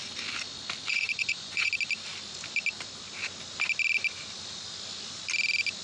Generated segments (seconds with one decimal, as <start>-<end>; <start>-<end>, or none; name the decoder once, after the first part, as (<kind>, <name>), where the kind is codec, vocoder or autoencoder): 0.9-1.7 (vocoder, Vocos)